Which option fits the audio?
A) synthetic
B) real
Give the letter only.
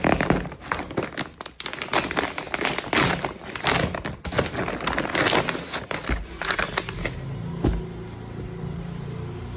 B